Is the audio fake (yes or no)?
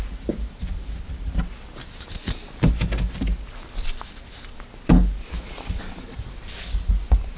no